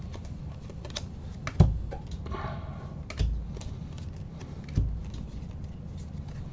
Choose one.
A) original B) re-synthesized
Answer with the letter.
A